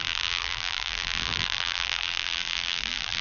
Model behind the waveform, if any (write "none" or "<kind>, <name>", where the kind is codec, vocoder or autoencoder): vocoder, BigVGAN v2